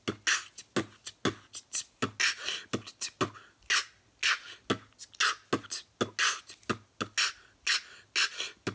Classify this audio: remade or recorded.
recorded